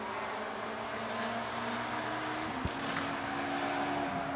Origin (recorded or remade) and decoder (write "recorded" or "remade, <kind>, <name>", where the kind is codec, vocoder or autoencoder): recorded